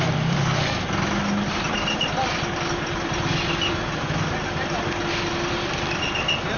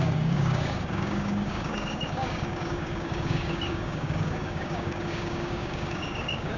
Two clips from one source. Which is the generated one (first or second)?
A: second